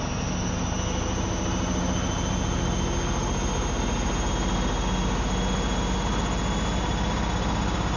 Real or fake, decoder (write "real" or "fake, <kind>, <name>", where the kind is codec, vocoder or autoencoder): real